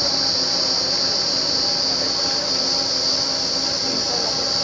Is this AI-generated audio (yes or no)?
no